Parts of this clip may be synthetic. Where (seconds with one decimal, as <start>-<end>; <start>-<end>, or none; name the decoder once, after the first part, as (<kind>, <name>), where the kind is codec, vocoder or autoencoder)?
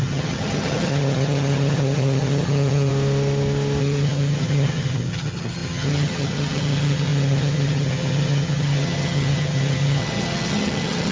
0.0-2.9 (vocoder, HiFi-GAN); 3.8-11.1